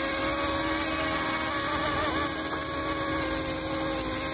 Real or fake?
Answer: real